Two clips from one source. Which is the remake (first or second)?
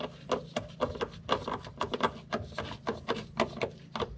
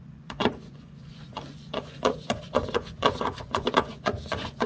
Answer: second